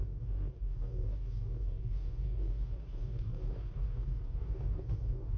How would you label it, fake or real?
fake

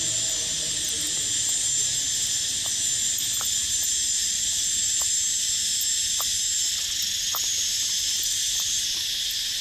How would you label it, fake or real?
real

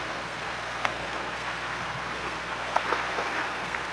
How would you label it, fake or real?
fake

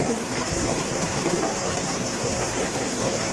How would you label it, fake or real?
fake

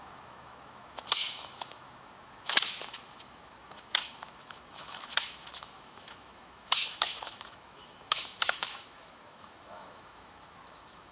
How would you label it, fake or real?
fake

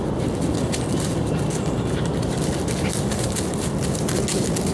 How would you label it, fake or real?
real